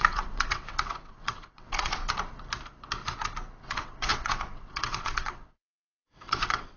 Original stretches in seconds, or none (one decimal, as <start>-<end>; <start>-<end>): 2.0-3.6